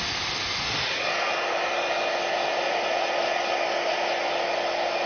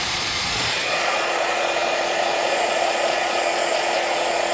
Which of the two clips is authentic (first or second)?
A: first